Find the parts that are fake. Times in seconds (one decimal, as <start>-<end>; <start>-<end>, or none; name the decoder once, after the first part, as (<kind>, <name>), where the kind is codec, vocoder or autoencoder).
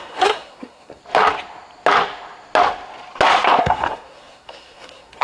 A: 0.0-1.0 (codec, SNAC); 3.6-5.2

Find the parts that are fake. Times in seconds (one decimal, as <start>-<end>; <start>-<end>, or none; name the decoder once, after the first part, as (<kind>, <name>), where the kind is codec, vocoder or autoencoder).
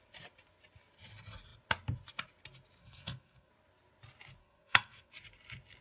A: 2.8-3.5 (codec, SNAC); 4.4-5.1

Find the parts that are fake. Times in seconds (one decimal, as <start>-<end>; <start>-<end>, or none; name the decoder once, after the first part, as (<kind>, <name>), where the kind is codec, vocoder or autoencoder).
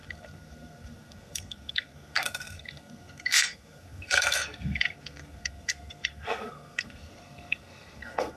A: 0.0-8.4 (codec, SNAC)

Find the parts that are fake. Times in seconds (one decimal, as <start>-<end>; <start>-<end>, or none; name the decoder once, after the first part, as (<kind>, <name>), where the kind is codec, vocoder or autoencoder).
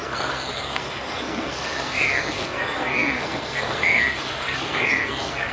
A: 0.0-5.5 (codec, SNAC)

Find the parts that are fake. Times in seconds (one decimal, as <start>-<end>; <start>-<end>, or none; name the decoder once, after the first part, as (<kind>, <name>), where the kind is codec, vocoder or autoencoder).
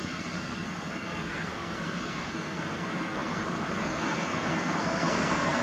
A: 0.0-5.6 (codec, SNAC)